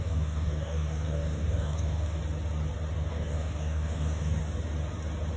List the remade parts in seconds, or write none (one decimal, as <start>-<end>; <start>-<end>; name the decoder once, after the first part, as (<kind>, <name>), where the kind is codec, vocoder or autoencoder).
0.0-2.2 (codec, DAC); 3.1-4.4